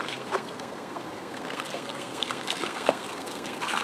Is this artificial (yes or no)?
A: yes